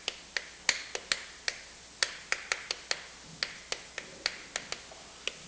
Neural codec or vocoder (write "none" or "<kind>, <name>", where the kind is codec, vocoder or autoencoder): none